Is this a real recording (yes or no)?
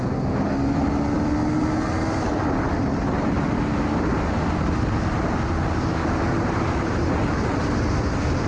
yes